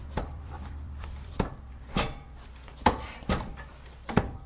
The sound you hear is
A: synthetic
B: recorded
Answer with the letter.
A